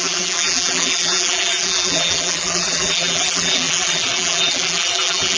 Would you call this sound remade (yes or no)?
yes